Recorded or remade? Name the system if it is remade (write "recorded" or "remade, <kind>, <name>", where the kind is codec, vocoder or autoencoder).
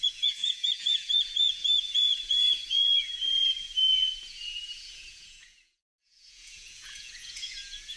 remade, vocoder, Vocos